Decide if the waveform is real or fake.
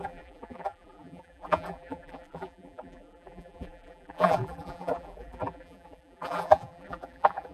fake